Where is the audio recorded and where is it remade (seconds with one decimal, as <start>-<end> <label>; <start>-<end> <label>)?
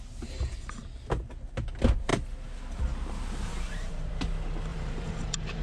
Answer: 0.0-3.5 recorded; 3.5-4.1 remade; 4.1-4.7 recorded; 4.7-5.6 remade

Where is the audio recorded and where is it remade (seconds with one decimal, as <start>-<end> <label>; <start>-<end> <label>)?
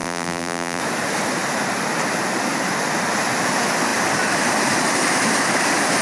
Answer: 0.0-0.8 remade; 0.8-6.0 recorded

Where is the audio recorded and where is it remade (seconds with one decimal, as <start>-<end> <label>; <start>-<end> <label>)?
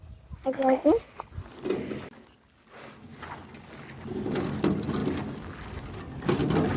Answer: 0.0-6.8 recorded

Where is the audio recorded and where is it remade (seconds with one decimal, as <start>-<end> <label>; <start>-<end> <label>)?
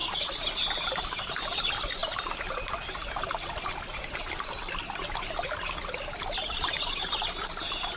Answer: 0.0-8.0 recorded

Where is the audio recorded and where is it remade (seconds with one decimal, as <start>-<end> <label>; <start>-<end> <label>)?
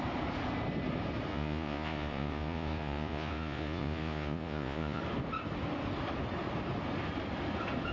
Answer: 0.0-1.3 recorded; 1.3-5.0 remade; 5.0-7.9 recorded